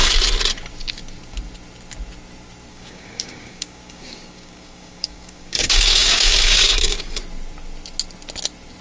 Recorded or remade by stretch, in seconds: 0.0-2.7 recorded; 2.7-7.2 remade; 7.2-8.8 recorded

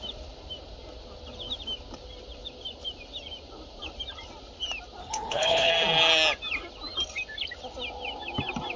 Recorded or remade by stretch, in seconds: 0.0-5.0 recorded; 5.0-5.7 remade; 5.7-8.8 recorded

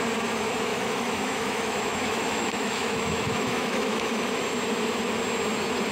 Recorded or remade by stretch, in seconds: 0.0-0.7 recorded; 0.7-4.2 remade; 4.2-5.9 recorded